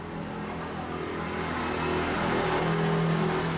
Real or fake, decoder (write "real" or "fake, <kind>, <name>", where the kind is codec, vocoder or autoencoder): real